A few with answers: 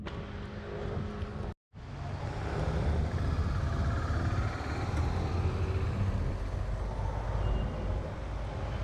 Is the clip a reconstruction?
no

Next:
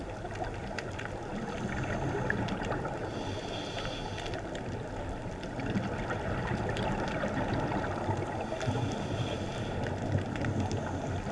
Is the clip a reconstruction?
no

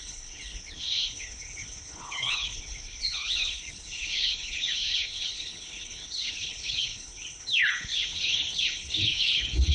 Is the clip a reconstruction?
yes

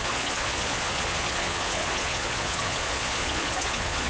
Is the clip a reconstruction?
yes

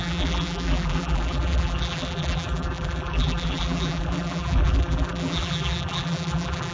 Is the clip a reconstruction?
yes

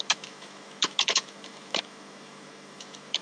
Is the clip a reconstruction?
yes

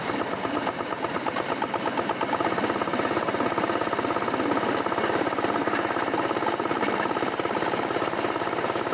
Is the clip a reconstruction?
no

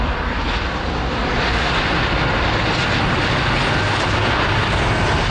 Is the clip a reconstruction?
no